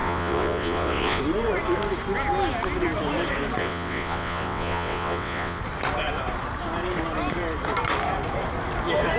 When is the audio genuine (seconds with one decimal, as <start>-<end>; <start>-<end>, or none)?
1.2-3.6; 5.6-9.2